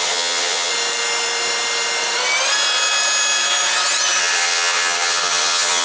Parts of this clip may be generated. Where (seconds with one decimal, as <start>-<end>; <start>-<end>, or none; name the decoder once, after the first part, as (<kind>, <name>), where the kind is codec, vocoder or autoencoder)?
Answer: 0.0-0.7 (vocoder, HiFi-GAN); 4.2-5.8